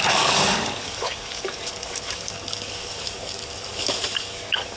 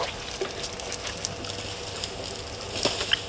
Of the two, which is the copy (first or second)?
first